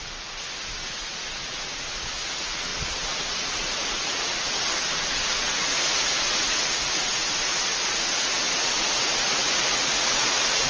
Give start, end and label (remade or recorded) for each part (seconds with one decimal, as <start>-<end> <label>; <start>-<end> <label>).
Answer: 0.0-10.7 remade